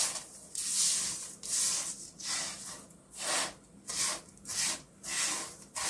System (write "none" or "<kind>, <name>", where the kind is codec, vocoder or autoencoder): none